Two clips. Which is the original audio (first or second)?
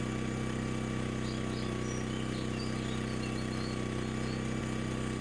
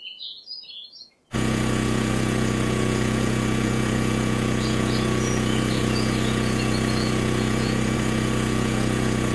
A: first